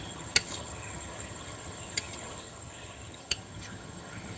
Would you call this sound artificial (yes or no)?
yes